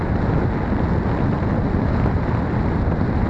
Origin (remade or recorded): recorded